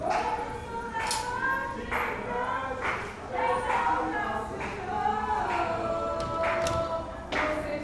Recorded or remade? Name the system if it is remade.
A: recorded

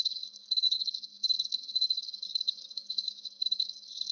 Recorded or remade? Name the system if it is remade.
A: remade, codec, SNAC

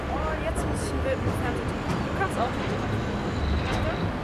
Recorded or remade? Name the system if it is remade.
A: recorded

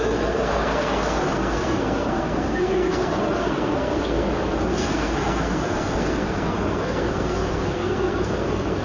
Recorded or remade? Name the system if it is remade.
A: remade, codec, SNAC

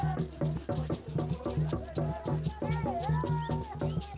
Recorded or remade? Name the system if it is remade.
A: recorded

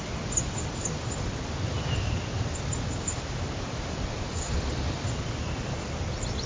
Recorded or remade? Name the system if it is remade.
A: recorded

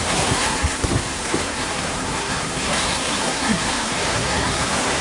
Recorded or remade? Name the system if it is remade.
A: remade, codec, SNAC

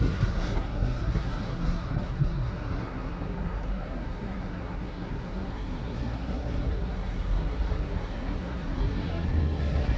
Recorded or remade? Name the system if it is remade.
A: remade, codec, SNAC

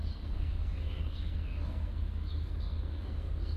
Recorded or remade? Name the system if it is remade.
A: remade, codec, SNAC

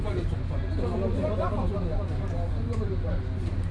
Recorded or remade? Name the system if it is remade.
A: recorded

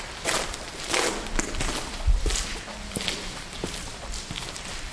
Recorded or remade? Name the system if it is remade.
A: recorded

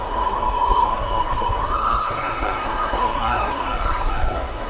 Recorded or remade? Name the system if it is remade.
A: remade, codec, SNAC